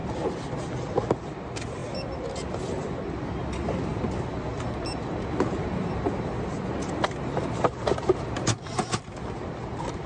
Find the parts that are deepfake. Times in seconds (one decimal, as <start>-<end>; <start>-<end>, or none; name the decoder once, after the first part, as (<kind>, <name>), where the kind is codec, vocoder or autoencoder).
none